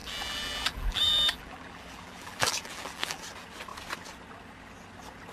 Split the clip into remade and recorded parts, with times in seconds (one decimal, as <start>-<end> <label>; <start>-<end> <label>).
0.0-3.2 remade; 3.2-5.3 recorded